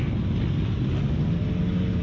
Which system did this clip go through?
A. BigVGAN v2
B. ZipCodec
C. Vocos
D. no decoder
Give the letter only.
D